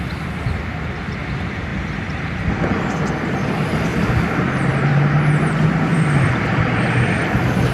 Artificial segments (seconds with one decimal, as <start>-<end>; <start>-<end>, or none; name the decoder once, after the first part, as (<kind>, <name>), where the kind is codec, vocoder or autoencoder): 1.7-2.8 (vocoder, BigVGAN v2); 5.9-7.7